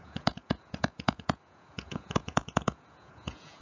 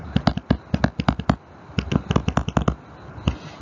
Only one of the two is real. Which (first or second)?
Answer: second